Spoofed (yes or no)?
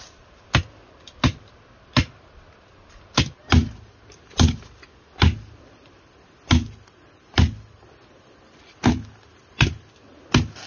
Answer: no